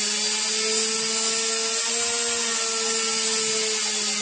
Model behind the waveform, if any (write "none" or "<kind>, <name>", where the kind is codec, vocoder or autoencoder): none